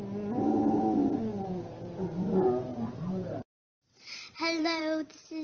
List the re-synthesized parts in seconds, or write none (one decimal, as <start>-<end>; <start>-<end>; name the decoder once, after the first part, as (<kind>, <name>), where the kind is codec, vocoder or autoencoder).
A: 1.3-1.9 (vocoder, BigVGAN v2); 2.7-4.8